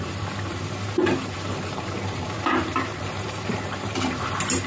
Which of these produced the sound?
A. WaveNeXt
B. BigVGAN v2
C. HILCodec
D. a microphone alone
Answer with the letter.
B